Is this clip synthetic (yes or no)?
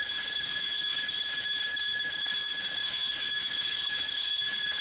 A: yes